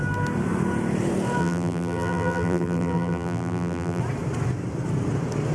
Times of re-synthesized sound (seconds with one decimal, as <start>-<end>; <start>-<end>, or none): 1.4-4.0